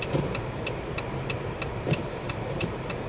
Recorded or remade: remade